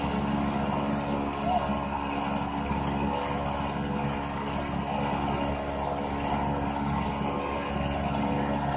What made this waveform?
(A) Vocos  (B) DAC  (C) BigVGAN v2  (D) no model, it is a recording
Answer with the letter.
D